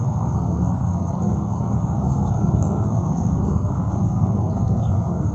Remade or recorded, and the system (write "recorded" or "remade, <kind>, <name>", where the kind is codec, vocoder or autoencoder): remade, codec, SNAC